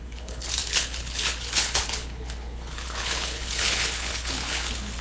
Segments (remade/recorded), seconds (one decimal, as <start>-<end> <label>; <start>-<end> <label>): 0.0-5.0 remade